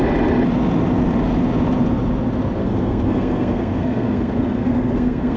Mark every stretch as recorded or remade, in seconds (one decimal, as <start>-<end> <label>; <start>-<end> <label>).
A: 0.0-2.6 recorded; 2.6-5.4 remade